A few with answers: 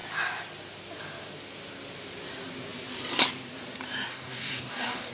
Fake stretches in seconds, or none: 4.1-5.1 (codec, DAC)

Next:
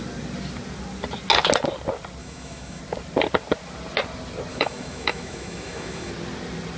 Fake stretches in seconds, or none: 2.2-2.8 (autoencoder, DAC-VAE); 4.5-6.1

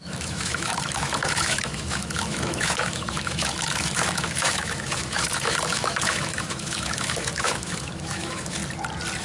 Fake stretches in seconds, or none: 0.0-8.6 (autoencoder, DAC-VAE)

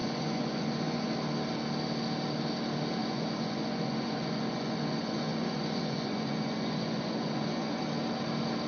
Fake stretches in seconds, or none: 0.0-1.1 (vocoder, Vocos); 3.0-7.8

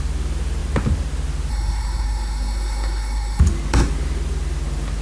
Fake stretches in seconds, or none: 1.5-3.4 (codec, SNAC)

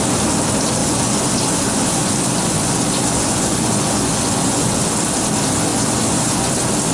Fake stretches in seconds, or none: 0.8-4.9 (vocoder, Vocos); 5.7-6.5

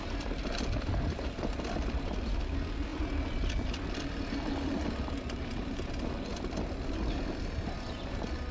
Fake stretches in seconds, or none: none

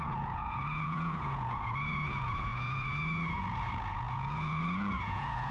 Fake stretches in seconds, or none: 0.0-5.5 (vocoder, Vocos)